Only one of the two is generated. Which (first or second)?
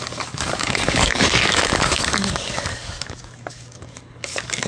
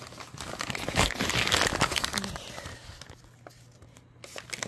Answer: first